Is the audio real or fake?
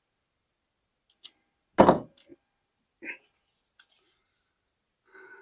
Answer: real